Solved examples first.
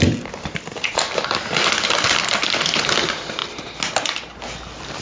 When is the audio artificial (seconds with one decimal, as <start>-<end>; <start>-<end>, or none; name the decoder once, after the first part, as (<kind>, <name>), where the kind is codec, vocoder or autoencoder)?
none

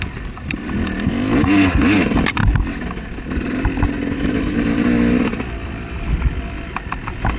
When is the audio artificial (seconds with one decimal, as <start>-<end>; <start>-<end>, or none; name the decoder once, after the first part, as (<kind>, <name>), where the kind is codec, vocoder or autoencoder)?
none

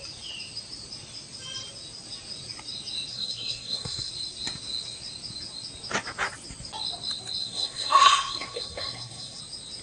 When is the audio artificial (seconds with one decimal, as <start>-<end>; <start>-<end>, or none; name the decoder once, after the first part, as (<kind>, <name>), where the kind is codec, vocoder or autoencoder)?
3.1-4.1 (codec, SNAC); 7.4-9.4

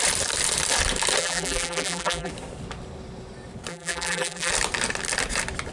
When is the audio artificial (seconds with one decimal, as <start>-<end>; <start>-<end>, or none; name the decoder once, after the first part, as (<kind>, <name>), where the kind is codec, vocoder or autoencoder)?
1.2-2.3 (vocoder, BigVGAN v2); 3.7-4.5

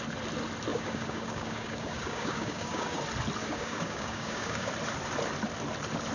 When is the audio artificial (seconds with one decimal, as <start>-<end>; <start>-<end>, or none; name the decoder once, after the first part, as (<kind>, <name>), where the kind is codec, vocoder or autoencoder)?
0.7-3.0 (codec, DAC); 3.4-4.7

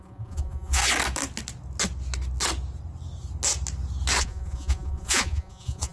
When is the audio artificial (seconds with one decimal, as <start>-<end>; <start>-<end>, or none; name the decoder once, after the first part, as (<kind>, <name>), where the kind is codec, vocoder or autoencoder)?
0.0-0.8 (vocoder, Vocos); 4.2-5.9

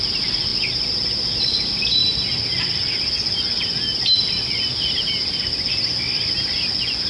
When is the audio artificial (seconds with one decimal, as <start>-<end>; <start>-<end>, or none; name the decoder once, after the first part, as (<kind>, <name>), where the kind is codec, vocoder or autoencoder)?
none

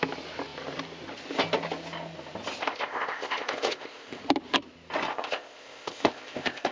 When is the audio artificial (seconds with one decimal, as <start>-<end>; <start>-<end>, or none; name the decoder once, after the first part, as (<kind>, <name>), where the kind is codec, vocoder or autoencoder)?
2.6-4.2 (codec, ZipCodec); 5.1-6.7